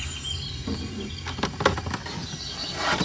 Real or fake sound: real